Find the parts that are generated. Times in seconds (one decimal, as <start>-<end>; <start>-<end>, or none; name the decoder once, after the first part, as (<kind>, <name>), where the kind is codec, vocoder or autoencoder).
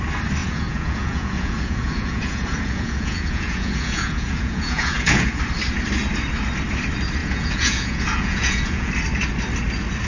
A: 0.4-5.4 (vocoder, Vocos); 7.2-8.9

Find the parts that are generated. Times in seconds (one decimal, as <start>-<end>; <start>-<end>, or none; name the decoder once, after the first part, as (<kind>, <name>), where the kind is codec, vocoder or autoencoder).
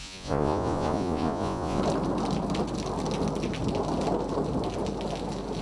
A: 0.0-1.8 (vocoder, Vocos)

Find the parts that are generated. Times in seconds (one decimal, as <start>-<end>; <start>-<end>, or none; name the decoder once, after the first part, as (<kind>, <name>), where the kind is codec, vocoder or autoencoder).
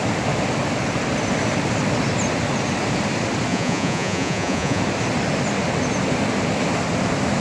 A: 3.5-4.8 (vocoder, Vocos)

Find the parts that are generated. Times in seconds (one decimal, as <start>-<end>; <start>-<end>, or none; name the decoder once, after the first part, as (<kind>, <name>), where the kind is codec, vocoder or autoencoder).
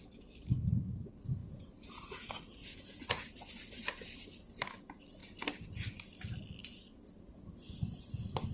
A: 1.4-3.3 (vocoder, Vocos)